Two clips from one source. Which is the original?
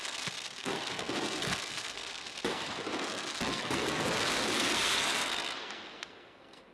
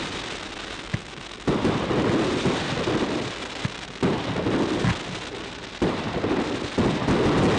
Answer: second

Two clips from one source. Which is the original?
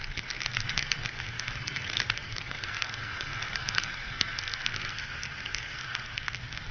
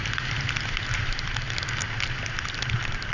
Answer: second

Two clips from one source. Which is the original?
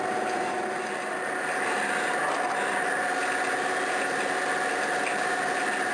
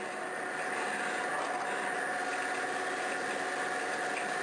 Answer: second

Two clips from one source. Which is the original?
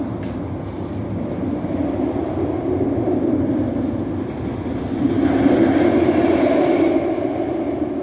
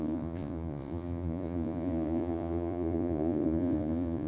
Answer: first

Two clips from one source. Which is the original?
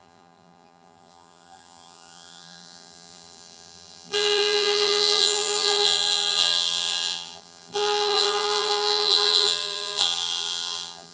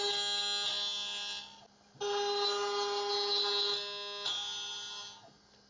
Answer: second